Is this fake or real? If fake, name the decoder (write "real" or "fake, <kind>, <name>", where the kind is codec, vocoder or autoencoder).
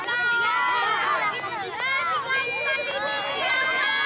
real